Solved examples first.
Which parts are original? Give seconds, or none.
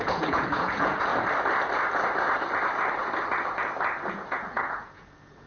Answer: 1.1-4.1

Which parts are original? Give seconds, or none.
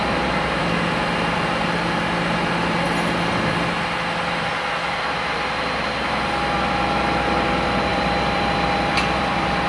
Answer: 0.0-7.9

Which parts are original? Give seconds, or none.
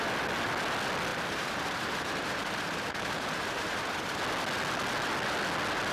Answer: 0.0-1.1; 4.2-5.9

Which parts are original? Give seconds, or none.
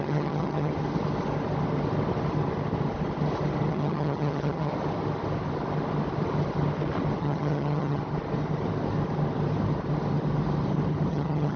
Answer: 0.7-3.7; 4.7-7.2; 8.0-11.1